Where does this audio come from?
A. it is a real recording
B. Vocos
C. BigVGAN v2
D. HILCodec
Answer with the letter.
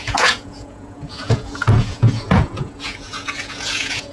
B